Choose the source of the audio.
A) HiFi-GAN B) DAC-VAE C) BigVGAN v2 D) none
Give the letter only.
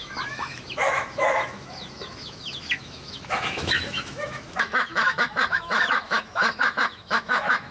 B